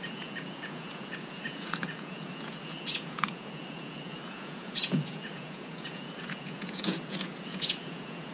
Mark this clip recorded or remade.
remade